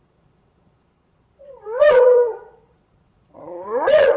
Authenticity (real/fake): fake